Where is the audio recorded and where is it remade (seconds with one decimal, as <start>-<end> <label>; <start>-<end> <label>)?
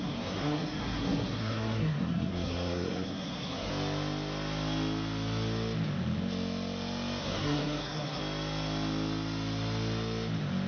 0.0-3.7 remade; 3.7-7.2 recorded; 7.2-8.2 remade; 8.2-10.7 recorded